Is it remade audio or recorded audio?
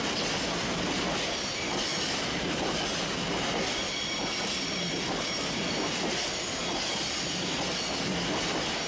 recorded